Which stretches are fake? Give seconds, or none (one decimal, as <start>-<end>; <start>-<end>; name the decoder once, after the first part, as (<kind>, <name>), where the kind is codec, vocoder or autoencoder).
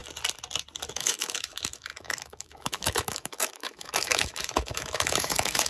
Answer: 0.9-5.7 (autoencoder, DAC-VAE)